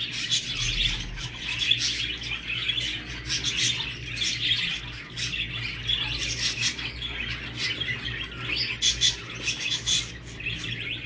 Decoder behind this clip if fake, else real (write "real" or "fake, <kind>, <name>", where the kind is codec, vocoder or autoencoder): real